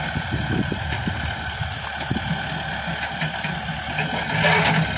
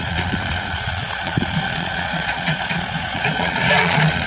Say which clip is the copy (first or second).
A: second